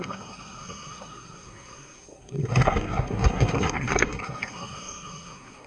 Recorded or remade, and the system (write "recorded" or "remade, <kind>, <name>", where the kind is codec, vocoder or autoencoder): remade, codec, SNAC